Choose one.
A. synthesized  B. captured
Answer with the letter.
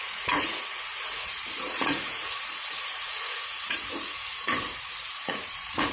A